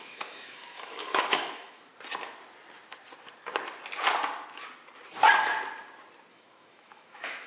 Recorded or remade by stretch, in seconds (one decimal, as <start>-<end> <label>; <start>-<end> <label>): 0.0-1.9 remade; 1.9-6.3 recorded; 6.3-7.5 remade